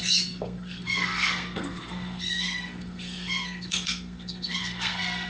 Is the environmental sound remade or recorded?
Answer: remade